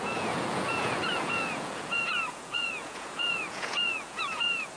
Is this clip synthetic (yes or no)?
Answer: yes